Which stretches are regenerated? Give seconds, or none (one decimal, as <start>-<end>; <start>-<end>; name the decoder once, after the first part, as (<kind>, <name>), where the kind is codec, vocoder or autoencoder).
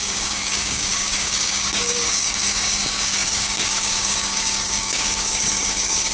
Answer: 0.0-6.1 (codec, DAC)